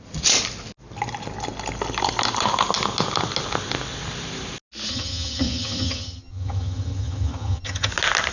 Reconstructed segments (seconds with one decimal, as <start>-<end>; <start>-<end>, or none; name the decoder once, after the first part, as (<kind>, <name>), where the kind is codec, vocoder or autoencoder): 4.9-7.9 (vocoder, HiFi-GAN)